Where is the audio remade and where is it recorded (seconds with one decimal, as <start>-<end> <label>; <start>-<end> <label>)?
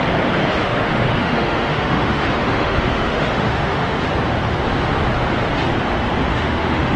0.0-0.7 recorded; 0.7-4.0 remade; 4.0-6.3 recorded; 6.3-7.0 remade